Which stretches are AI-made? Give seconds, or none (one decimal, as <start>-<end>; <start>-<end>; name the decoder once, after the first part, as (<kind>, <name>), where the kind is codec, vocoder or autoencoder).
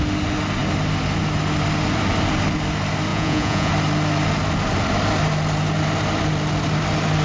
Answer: 3.1-3.7 (vocoder, Vocos)